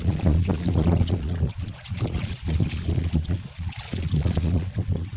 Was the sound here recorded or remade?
remade